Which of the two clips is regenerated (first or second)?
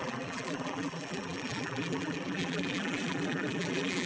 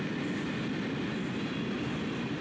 first